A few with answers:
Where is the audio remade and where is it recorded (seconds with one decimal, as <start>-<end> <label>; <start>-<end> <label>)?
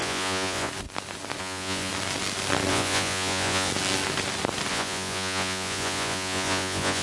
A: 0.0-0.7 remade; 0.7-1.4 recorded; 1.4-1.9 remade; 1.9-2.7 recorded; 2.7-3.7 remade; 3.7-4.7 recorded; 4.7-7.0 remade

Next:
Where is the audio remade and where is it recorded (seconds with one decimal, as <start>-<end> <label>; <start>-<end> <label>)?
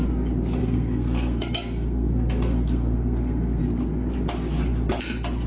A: 0.0-0.6 recorded; 0.6-3.6 remade; 3.6-5.5 recorded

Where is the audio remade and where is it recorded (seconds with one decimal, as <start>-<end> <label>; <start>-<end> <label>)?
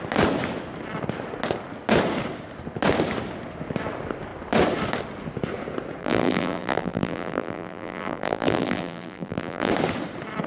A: 0.0-6.0 recorded; 6.0-9.7 remade; 9.7-10.5 recorded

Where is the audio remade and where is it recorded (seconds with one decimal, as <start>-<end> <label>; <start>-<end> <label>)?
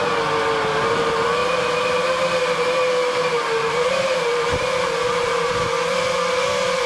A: 0.0-1.4 recorded; 1.4-5.5 remade; 5.5-6.9 recorded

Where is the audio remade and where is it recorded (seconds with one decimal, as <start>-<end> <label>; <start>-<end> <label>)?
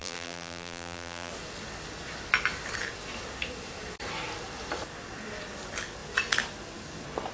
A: 0.0-1.3 remade; 1.3-7.3 recorded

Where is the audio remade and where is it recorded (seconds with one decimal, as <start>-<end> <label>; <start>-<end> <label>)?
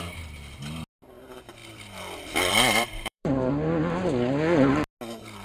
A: 0.0-1.6 recorded; 1.6-3.5 remade; 3.5-5.4 recorded